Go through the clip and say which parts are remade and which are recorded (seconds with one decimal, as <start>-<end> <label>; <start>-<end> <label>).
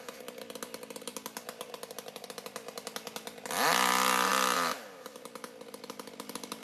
0.0-6.6 recorded